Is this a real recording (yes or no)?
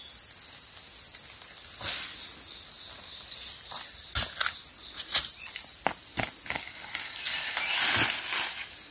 yes